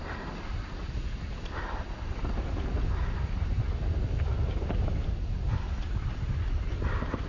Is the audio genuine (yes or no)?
yes